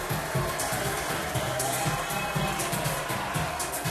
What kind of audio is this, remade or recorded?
recorded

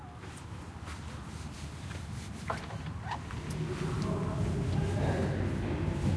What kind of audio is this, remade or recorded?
recorded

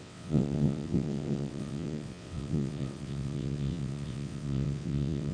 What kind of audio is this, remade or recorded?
remade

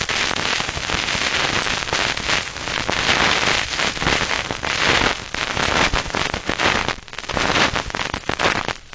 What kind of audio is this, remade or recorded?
recorded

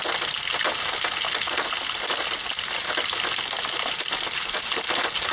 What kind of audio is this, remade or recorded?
recorded